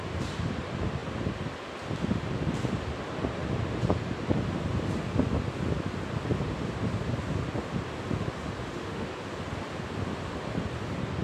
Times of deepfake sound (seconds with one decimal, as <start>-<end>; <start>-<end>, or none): 8.6-9.1